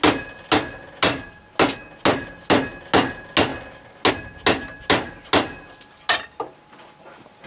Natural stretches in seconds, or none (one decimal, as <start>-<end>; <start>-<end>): 0.0-7.5